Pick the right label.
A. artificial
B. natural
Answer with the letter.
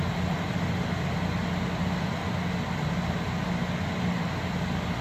B